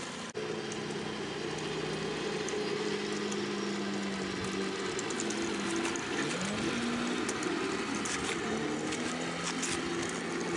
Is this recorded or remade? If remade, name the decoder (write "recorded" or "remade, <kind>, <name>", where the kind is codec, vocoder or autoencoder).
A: recorded